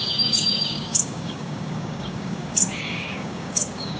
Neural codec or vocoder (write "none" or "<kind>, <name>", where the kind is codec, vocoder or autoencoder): codec, DAC